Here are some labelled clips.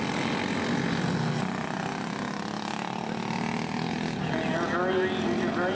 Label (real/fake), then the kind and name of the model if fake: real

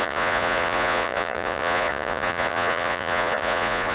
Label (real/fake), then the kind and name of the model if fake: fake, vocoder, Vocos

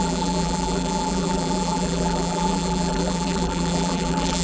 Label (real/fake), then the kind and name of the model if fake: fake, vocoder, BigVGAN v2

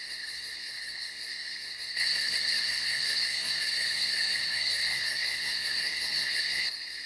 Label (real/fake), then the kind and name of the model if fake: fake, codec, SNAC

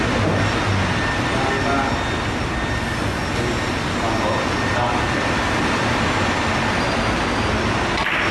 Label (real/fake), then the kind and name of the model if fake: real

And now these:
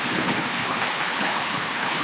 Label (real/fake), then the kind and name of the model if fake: fake, codec, HILCodec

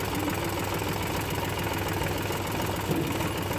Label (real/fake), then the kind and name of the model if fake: real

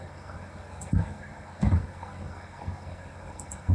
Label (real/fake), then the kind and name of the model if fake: fake, codec, SNAC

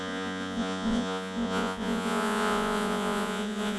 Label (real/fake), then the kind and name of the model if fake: fake, vocoder, Vocos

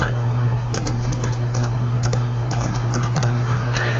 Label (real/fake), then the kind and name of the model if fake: fake, codec, SNAC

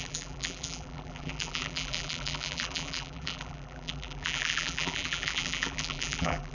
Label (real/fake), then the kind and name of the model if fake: fake, vocoder, BigVGAN v2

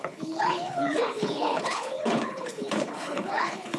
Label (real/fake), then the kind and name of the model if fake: fake, codec, HILCodec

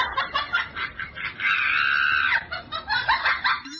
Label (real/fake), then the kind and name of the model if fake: real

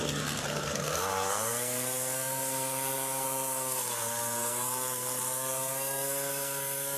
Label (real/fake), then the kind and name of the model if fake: fake, codec, SNAC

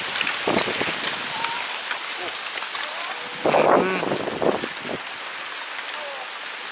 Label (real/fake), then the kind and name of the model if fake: real